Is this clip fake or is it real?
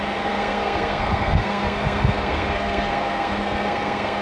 fake